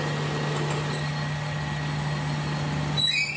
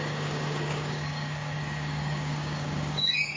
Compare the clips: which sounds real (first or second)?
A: first